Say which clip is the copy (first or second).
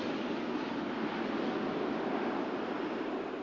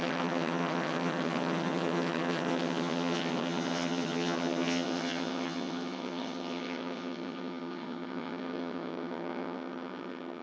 second